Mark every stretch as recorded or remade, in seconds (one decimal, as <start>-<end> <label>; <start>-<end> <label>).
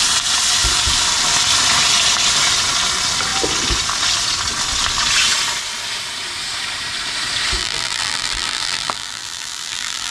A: 0.0-7.6 recorded; 7.6-10.1 remade